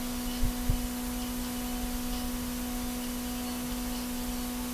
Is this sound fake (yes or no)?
no